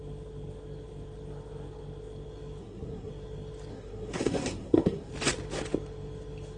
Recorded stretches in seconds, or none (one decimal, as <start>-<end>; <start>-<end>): 0.0-2.6; 3.1-3.7; 5.1-6.6